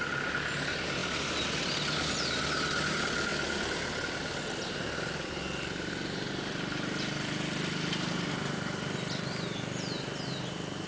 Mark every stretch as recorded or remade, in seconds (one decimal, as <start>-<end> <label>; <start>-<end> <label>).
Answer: 0.0-10.9 recorded